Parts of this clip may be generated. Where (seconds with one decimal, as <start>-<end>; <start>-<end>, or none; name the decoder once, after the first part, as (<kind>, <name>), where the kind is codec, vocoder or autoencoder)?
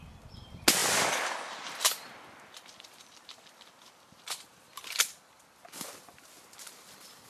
0.8-5.2 (vocoder, BigVGAN v2)